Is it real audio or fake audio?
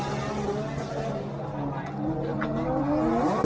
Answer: real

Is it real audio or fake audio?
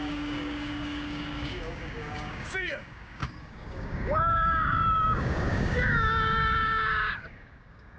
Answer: fake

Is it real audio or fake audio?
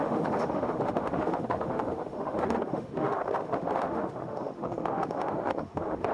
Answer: fake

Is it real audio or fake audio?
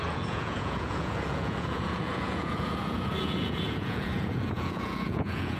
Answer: fake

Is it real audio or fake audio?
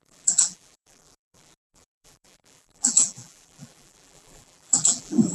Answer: fake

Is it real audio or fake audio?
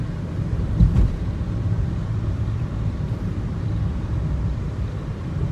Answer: fake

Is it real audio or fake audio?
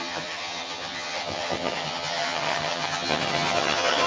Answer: fake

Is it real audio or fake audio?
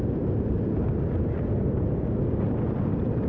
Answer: real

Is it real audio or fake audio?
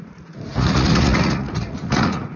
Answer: fake